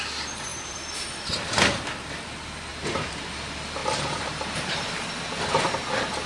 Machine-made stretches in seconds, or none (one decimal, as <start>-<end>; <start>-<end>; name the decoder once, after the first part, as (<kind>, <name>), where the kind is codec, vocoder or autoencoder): 0.5-1.1 (vocoder, BigVGAN v2); 2.7-3.3; 3.8-4.9